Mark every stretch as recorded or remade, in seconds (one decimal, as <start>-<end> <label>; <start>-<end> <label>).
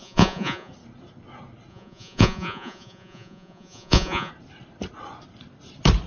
0.0-0.7 remade; 0.7-1.7 recorded; 1.7-4.3 remade; 4.3-6.1 recorded